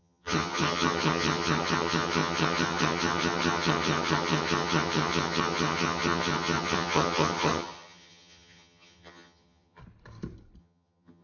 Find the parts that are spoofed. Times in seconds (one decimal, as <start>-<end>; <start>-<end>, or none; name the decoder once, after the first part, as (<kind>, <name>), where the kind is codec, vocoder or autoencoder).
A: 0.0-9.8 (vocoder, HiFi-GAN); 10.6-11.2